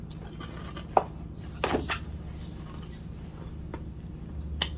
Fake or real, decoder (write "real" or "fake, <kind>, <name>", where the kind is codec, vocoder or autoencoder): real